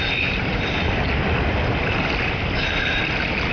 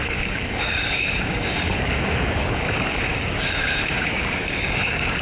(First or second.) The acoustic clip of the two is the first